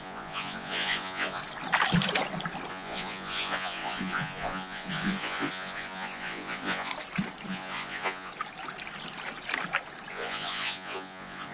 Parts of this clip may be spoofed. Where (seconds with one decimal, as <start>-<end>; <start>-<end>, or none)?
0.0-1.4; 2.7-6.9; 7.5-8.3; 10.1-11.5